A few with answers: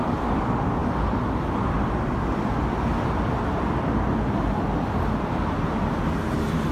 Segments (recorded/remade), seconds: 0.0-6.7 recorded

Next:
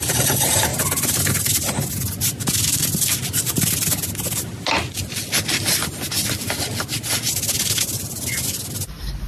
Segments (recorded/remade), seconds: 0.0-9.3 recorded